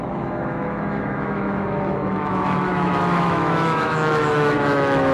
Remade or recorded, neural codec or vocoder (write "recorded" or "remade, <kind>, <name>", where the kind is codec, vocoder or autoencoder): remade, autoencoder, DAC-VAE